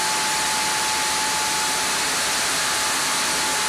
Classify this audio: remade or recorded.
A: recorded